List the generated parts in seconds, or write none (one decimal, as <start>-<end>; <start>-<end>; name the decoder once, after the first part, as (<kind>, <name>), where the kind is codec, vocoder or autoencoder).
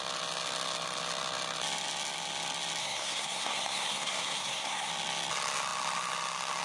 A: 2.8-4.9 (codec, SNAC)